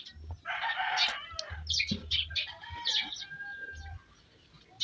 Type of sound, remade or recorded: recorded